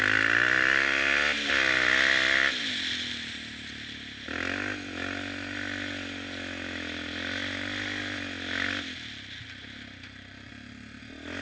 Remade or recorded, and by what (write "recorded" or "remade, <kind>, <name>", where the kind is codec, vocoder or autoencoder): recorded